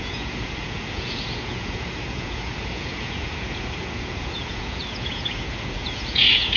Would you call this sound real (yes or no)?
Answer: no